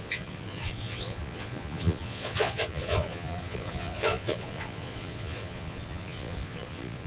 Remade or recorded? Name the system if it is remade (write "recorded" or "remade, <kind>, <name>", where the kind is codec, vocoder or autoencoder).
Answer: remade, vocoder, Vocos